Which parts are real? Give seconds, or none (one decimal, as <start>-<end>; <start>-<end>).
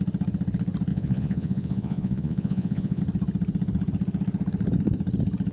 0.0-0.9; 3.0-5.5